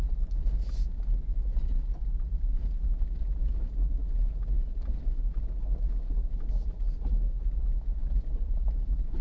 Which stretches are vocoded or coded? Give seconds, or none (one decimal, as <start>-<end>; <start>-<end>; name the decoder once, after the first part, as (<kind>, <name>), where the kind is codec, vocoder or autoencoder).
none